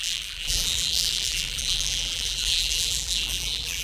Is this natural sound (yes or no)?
no